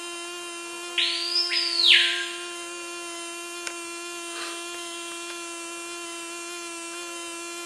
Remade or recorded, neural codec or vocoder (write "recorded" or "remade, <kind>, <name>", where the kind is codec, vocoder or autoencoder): recorded